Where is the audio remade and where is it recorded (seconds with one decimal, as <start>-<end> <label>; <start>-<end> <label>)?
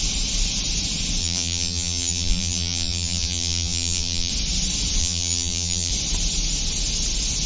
0.0-1.2 recorded; 1.2-4.3 remade; 4.3-5.0 recorded; 5.0-5.9 remade; 5.9-7.5 recorded